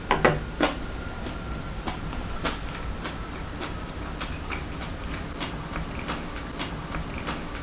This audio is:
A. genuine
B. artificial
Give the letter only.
A